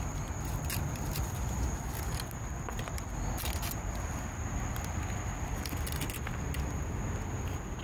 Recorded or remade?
recorded